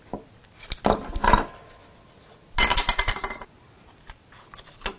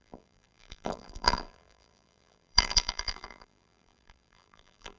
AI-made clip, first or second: second